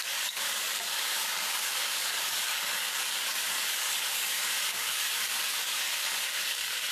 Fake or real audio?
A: fake